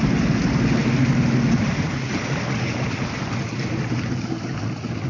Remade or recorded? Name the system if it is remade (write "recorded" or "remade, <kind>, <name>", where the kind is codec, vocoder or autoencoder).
recorded